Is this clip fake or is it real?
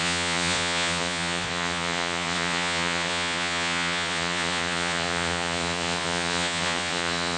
fake